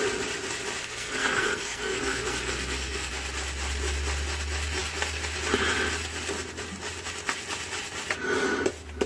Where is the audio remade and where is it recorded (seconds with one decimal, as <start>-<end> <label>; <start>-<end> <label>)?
0.0-0.8 recorded; 0.8-3.1 remade; 3.1-9.1 recorded